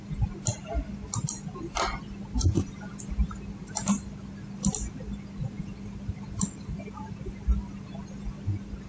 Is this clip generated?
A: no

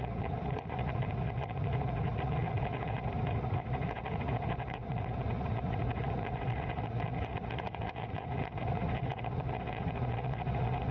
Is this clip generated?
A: yes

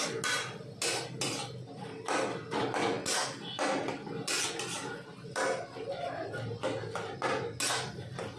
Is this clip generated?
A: no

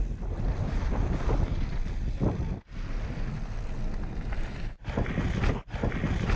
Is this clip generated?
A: no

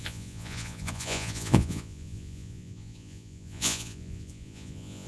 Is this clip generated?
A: yes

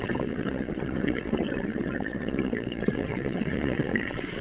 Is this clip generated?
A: yes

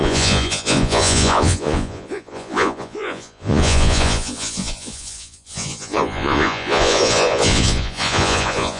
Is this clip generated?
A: yes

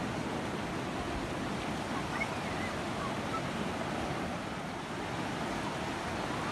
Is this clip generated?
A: no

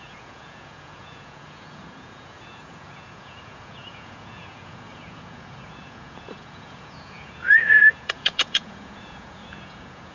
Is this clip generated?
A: yes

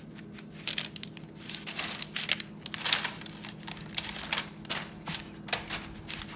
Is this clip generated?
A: no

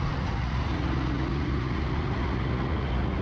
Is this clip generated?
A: yes